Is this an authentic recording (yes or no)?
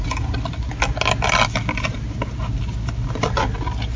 yes